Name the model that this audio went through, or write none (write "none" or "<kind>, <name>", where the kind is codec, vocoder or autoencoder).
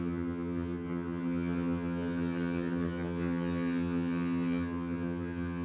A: vocoder, HiFi-GAN